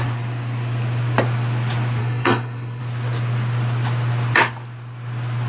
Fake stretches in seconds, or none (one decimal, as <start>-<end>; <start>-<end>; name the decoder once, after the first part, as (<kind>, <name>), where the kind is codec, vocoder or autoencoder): 2.0-2.8 (codec, SNAC)